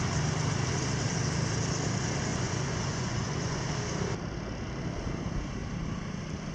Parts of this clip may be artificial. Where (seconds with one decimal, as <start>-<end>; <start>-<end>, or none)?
2.3-3.6